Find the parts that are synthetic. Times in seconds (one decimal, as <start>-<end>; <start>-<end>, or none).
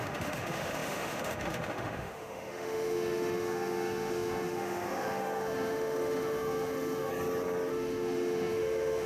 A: 0.0-7.1; 7.7-9.1